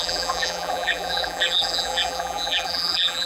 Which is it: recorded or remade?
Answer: remade